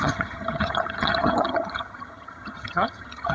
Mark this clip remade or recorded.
remade